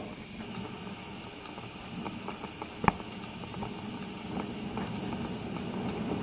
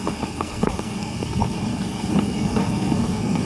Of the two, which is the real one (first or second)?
first